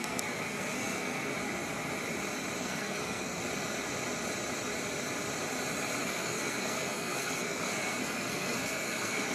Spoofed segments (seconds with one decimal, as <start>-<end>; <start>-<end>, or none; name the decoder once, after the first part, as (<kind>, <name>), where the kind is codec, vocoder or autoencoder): 0.0-1.3 (codec, SNAC); 2.6-3.4; 6.0-9.3